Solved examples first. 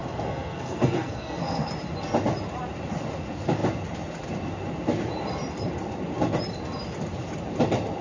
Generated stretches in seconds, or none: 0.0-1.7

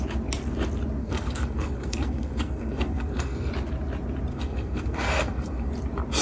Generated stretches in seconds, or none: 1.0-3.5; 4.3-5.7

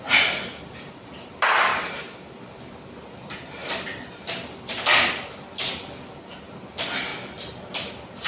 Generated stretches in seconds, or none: 1.7-2.4

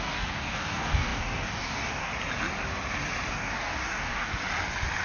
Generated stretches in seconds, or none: 0.0-2.1; 3.3-4.3